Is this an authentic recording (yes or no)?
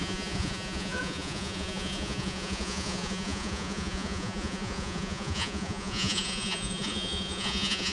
no